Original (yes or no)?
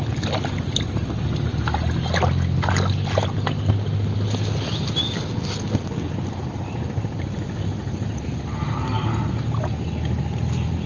yes